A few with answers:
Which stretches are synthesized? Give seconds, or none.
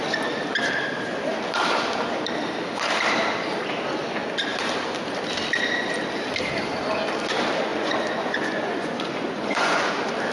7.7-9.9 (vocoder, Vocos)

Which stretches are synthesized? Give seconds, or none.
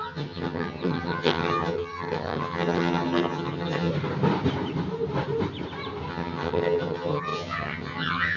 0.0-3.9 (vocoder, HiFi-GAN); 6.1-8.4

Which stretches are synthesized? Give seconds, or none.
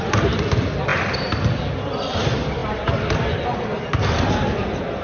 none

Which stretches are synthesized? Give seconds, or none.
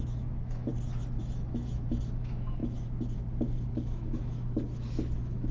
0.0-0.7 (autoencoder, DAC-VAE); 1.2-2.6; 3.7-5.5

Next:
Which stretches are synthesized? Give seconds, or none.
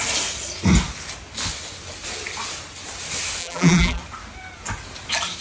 3.4-4.0 (vocoder, BigVGAN v2)